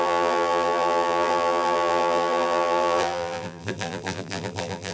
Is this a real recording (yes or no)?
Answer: no